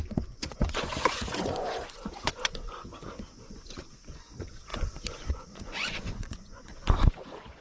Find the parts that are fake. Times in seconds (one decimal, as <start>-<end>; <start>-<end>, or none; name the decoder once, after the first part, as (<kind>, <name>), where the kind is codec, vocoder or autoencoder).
0.0-7.6 (vocoder, Vocos)